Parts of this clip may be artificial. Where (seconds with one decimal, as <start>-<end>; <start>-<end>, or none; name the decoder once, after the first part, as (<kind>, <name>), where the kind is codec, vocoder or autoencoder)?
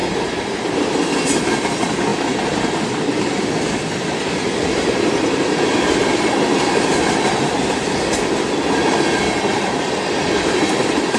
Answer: 0.0-0.7 (vocoder, BigVGAN v2)